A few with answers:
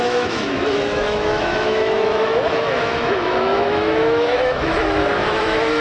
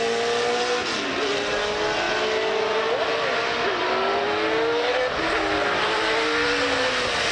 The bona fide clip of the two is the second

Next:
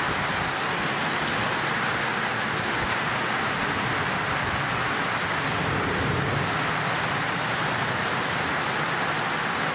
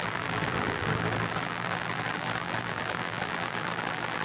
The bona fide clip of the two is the first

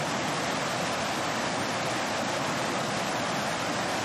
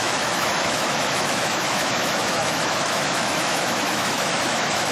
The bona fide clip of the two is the first